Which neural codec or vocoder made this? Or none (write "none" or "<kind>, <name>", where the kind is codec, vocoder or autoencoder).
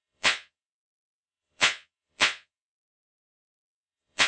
vocoder, Vocos